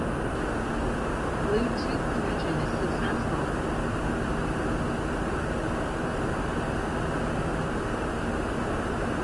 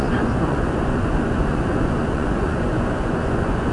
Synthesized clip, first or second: second